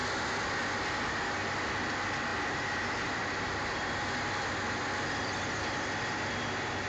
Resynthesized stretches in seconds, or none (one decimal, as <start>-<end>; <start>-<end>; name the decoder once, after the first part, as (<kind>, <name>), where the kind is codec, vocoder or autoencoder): none